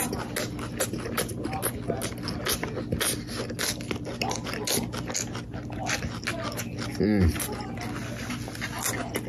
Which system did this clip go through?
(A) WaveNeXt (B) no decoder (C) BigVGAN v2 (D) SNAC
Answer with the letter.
B